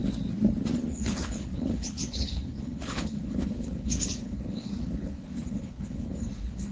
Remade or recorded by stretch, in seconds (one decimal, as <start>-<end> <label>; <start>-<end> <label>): 0.0-0.9 recorded; 0.9-6.7 remade